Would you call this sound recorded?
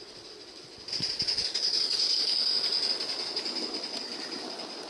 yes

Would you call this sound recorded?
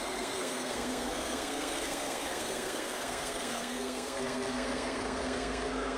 no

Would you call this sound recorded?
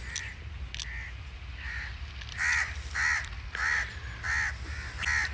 yes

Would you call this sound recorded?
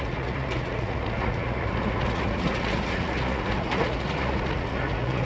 no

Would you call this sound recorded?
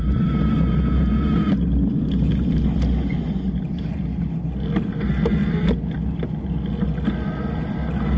yes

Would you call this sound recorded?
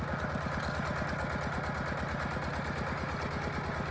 yes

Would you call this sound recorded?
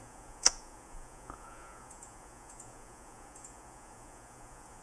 no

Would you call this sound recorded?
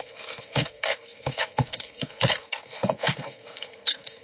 no